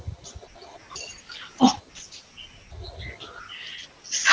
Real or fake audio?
real